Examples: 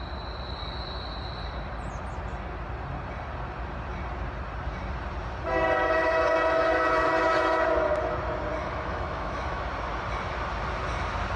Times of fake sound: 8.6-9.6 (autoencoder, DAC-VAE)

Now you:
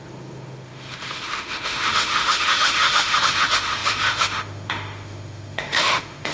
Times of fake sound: 0.0-6.3 (autoencoder, DAC-VAE)

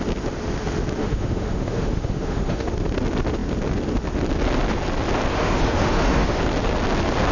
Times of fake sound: 1.0-2.7 (autoencoder, DAC-VAE); 5.3-6.4

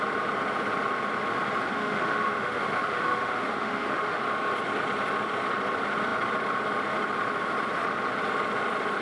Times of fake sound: 1.7-4.2 (autoencoder, DAC-VAE)

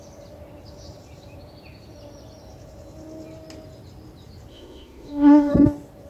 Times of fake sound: 4.5-5.5 (autoencoder, DAC-VAE)

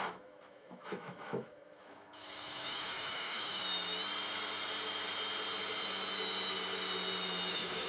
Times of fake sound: 0.0-3.6 (autoencoder, DAC-VAE); 7.5-7.9

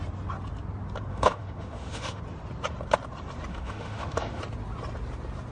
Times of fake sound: 1.1-2.2 (autoencoder, DAC-VAE); 3.5-4.4

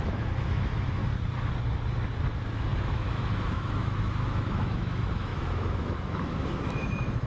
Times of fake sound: 0.0-1.0 (autoencoder, DAC-VAE); 2.8-7.3